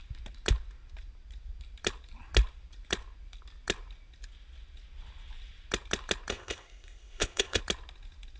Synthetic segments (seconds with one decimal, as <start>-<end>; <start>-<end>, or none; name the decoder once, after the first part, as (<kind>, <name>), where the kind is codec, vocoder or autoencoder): 6.3-7.6 (codec, ZipCodec)